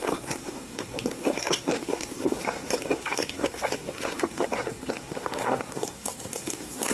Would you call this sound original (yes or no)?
no